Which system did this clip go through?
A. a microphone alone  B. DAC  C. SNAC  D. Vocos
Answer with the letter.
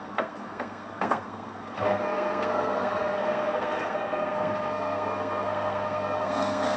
C